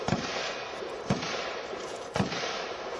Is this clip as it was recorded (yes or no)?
no